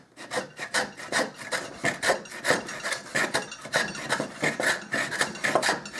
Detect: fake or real real